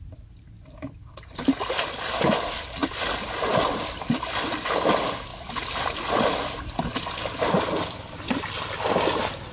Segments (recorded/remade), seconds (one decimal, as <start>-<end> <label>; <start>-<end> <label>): 0.0-9.5 recorded